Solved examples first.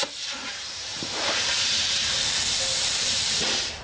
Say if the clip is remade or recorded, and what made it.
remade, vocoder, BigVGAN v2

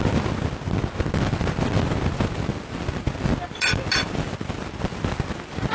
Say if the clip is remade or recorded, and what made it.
recorded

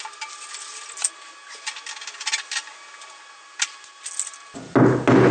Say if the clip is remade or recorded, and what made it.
recorded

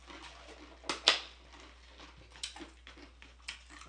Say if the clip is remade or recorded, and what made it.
recorded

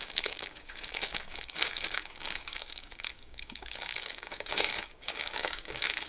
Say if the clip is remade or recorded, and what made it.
remade, codec, DAC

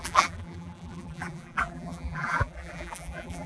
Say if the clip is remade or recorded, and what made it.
remade, vocoder, BigVGAN v2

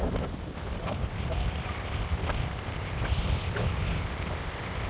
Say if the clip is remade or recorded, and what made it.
recorded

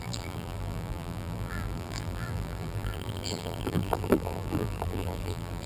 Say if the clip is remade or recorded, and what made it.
remade, vocoder, BigVGAN v2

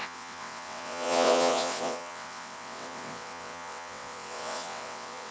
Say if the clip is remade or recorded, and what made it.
remade, vocoder, WaveNeXt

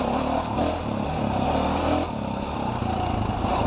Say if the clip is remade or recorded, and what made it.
recorded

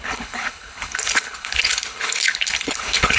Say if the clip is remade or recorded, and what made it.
remade, codec, HILCodec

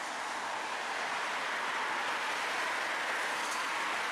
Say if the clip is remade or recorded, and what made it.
recorded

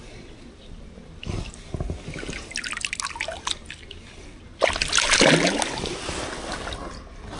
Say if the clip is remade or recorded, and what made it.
recorded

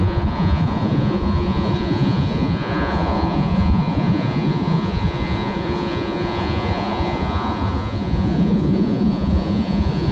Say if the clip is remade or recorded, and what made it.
remade, vocoder, Vocos